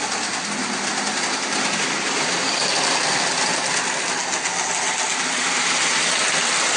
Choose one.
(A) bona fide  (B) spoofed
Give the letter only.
A